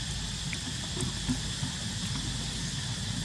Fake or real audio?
real